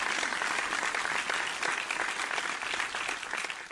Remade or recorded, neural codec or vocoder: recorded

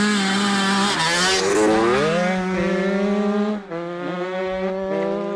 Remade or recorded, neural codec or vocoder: recorded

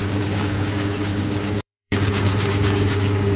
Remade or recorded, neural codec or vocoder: remade, codec, DAC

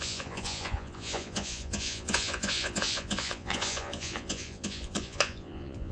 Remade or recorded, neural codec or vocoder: remade, vocoder, Vocos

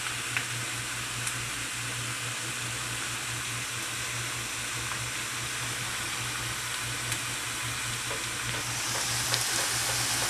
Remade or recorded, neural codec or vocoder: recorded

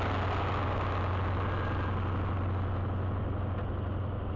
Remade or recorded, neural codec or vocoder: recorded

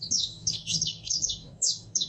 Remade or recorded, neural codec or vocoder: remade, codec, DAC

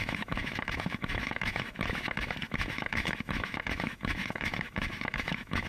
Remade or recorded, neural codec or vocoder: remade, autoencoder, DAC-VAE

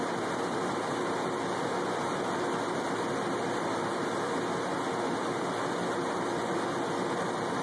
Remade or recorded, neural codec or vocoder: recorded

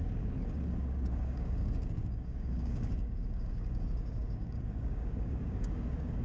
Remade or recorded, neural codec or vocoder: remade, codec, DAC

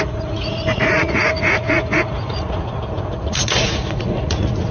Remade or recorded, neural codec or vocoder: remade, vocoder, Vocos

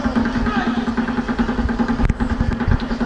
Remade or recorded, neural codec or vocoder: recorded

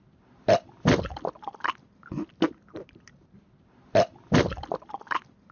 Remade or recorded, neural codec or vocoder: recorded